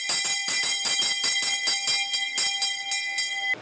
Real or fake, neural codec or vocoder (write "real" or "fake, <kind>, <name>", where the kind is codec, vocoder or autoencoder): real